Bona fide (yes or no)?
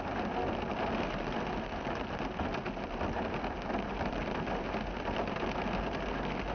yes